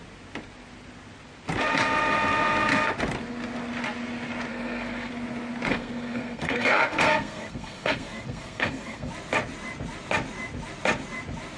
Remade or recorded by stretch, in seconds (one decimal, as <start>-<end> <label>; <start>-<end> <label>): 0.0-4.5 recorded; 4.5-5.1 remade; 5.1-5.7 recorded; 5.7-9.1 remade; 9.1-11.6 recorded